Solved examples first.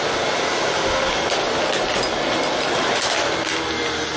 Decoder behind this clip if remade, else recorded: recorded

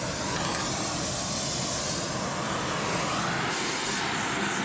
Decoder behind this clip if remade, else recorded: recorded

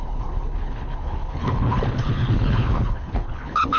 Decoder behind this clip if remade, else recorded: remade, codec, HILCodec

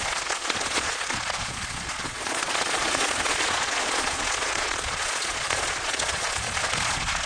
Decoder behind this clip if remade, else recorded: remade, vocoder, Vocos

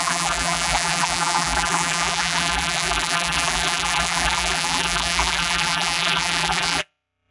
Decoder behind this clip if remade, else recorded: remade, vocoder, BigVGAN v2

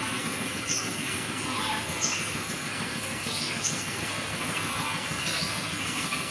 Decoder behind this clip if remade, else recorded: remade, codec, SNAC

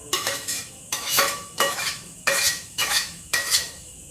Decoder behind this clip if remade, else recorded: remade, autoencoder, DAC-VAE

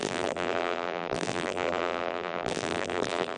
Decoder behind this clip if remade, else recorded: remade, vocoder, BigVGAN v2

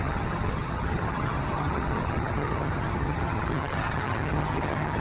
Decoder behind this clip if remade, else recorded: remade, vocoder, HiFi-GAN